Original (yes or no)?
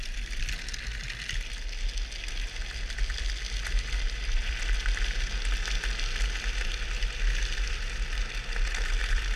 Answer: yes